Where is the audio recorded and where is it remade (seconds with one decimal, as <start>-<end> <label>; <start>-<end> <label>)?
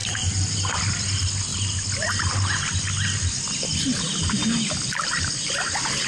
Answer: 0.0-0.8 remade; 0.8-6.1 recorded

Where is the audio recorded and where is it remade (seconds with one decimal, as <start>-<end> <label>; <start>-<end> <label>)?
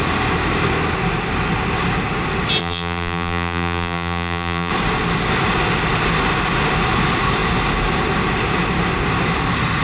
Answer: 0.0-2.6 recorded; 2.6-4.7 remade; 4.7-9.8 recorded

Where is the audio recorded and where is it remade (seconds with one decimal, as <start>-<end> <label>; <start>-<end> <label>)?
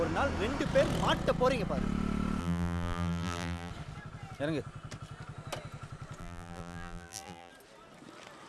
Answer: 0.0-2.4 recorded; 2.4-3.7 remade; 3.7-6.2 recorded; 6.2-7.5 remade; 7.5-8.5 recorded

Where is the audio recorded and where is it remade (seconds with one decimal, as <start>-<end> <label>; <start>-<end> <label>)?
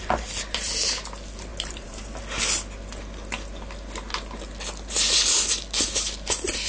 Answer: 0.0-1.5 recorded; 1.5-2.2 remade; 2.2-6.7 recorded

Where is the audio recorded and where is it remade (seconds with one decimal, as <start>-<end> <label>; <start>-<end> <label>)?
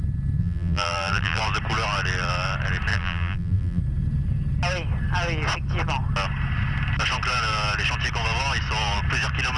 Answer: 0.0-0.4 recorded; 0.4-1.4 remade; 1.4-2.9 recorded; 2.9-3.8 remade; 3.8-9.6 recorded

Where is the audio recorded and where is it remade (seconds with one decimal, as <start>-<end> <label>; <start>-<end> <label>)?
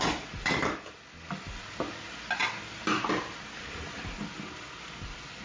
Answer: 0.0-5.4 recorded